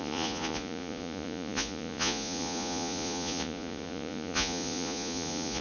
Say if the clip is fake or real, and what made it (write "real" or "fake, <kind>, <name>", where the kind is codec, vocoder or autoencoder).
fake, vocoder, Vocos